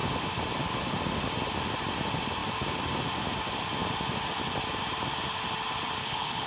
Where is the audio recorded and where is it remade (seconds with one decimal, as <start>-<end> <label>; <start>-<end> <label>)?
0.0-6.0 recorded; 6.0-6.5 remade